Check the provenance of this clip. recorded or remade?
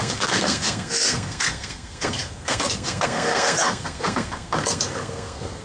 remade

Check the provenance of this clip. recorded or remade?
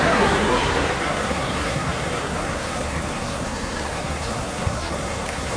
remade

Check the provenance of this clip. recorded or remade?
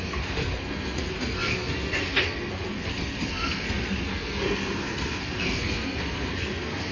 remade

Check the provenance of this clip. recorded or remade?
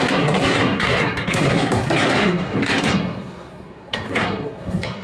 remade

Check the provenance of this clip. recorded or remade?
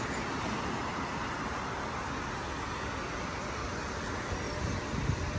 recorded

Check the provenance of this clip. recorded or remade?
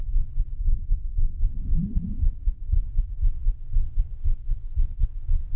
remade